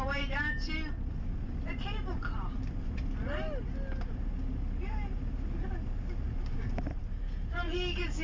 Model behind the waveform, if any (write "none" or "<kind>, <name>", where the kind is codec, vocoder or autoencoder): none